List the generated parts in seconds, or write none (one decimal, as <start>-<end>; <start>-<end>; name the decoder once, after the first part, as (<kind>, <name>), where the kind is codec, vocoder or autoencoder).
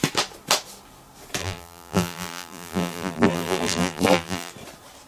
1.4-4.5 (vocoder, BigVGAN v2)